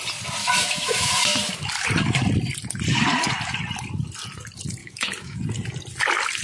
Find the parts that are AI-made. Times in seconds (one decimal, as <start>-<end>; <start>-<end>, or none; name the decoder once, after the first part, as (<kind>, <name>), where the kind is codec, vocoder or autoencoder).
0.4-1.1 (autoencoder, DAC-VAE); 4.8-5.4